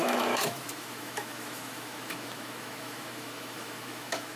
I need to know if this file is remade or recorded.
remade